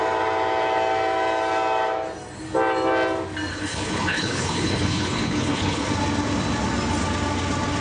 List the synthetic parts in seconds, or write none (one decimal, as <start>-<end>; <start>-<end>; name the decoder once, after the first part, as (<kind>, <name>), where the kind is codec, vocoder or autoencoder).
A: 3.5-5.9 (codec, HILCodec)